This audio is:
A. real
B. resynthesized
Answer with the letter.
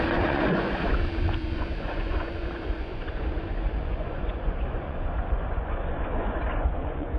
B